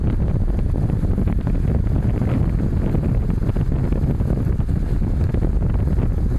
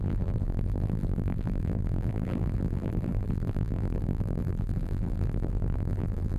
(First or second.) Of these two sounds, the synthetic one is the second